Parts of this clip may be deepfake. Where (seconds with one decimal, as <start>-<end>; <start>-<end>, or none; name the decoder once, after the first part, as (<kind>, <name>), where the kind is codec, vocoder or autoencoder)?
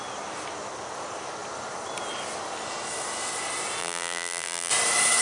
3.8-4.7 (vocoder, BigVGAN v2)